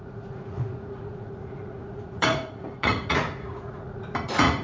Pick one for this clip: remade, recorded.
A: remade